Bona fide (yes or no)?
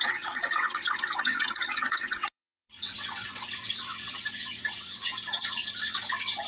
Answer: no